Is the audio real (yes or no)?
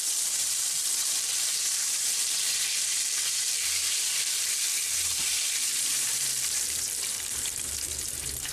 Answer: no